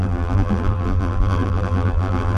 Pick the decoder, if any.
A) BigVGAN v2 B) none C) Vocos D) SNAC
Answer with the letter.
A